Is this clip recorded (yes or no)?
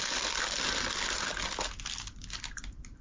yes